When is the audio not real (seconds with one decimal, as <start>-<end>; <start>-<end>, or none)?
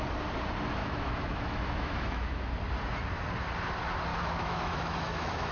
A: 0.8-2.5; 4.1-5.5